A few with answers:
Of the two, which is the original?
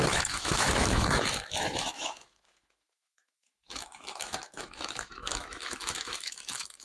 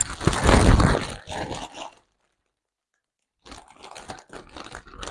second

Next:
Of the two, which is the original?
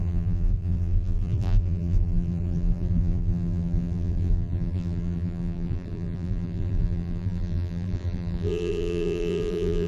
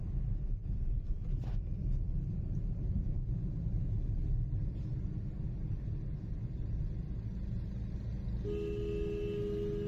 second